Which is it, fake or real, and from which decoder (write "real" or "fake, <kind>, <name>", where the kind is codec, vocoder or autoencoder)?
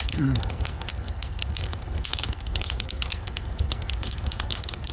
fake, codec, SNAC